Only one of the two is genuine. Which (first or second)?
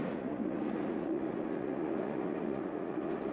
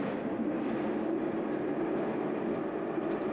second